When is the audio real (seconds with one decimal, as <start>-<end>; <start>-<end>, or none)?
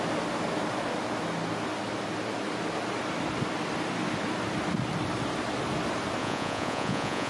0.0-6.2